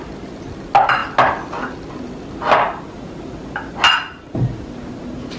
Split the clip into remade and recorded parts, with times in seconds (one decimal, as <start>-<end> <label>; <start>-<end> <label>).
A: 0.0-5.4 recorded